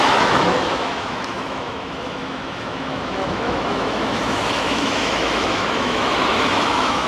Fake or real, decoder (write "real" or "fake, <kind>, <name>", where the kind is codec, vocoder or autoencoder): fake, autoencoder, DAC-VAE